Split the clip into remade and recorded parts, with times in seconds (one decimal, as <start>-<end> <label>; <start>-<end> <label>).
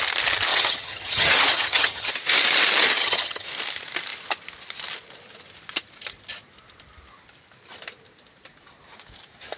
0.0-0.5 recorded; 0.5-2.1 remade; 2.1-3.0 recorded; 3.0-3.5 remade; 3.5-9.6 recorded